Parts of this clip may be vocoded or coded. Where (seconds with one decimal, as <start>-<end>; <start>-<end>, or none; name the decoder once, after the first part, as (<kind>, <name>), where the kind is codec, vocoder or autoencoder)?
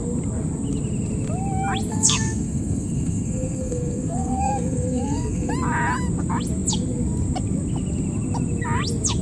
1.9-5.5 (codec, SNAC)